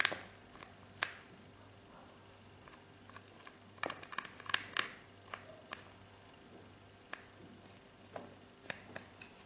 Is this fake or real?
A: real